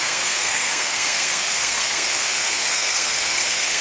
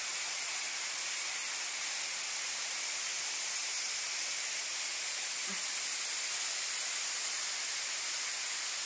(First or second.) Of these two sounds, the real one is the second